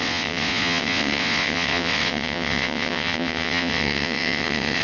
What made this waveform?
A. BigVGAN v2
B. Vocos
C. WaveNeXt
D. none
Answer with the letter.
C